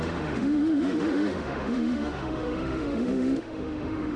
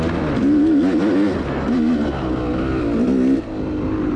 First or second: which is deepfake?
first